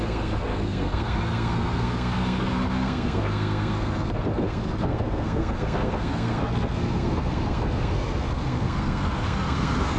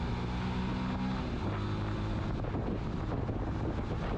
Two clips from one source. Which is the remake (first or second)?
first